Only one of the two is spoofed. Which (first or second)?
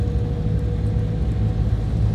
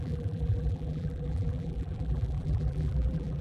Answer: second